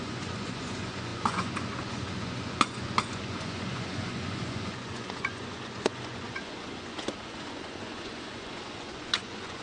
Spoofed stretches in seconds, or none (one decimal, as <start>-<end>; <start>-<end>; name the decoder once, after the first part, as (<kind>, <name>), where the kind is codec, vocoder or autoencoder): 0.0-9.6 (vocoder, Vocos)